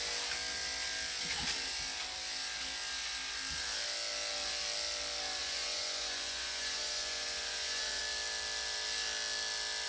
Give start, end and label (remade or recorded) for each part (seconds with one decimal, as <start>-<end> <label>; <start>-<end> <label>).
0.0-5.4 recorded; 5.4-8.0 remade; 8.0-9.9 recorded